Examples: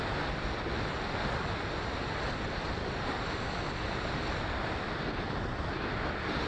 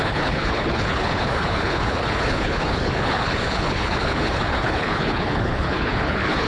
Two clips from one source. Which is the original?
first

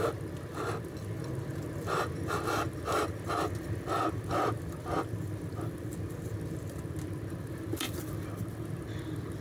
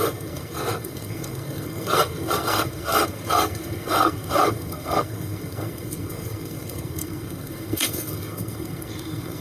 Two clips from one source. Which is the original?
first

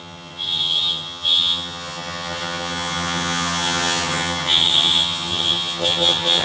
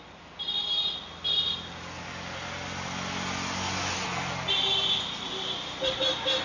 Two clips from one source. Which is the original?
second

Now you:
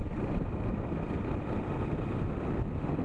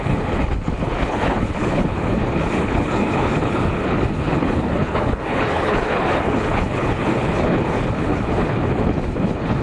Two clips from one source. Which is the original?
first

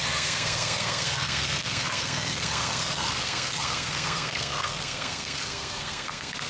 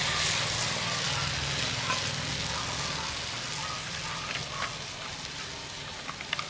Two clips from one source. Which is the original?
second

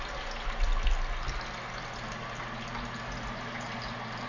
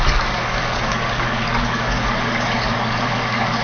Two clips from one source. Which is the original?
first